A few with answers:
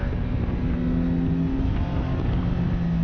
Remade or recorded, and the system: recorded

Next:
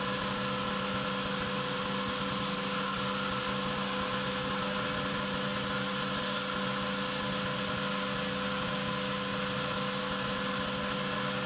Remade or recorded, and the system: recorded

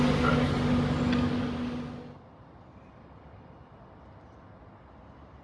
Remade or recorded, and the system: recorded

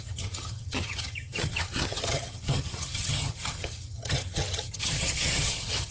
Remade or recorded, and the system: remade, vocoder, HiFi-GAN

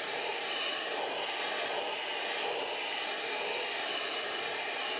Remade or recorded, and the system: recorded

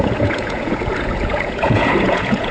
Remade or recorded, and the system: remade, vocoder, Vocos